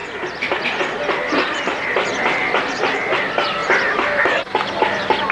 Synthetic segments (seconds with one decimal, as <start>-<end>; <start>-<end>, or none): 0.0-3.2; 3.6-4.2